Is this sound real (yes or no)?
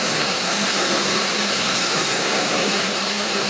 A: no